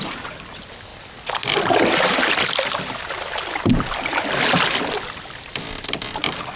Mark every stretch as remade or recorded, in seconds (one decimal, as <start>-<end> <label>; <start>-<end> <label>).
0.0-6.6 recorded